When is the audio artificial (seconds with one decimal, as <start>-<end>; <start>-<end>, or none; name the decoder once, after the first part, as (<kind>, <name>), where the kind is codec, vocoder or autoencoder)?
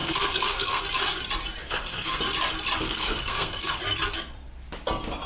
0.0-0.8 (codec, SNAC); 1.6-2.2; 2.8-3.8